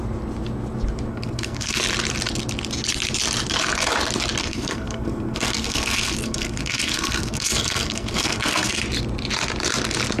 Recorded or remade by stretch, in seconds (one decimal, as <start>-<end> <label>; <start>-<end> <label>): 0.0-1.1 recorded; 1.1-1.8 remade; 1.8-4.4 recorded; 4.4-8.8 remade; 8.8-10.2 recorded